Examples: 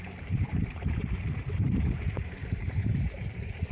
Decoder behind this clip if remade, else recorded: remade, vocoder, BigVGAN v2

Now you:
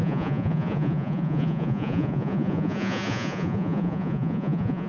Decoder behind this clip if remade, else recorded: remade, vocoder, Vocos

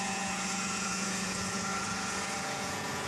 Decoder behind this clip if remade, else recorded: remade, vocoder, Vocos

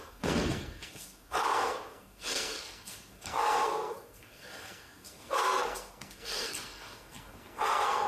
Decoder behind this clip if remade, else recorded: remade, codec, SNAC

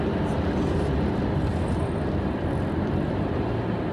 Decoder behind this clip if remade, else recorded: recorded